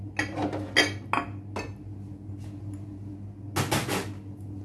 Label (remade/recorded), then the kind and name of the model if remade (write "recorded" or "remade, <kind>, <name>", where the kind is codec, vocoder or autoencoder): recorded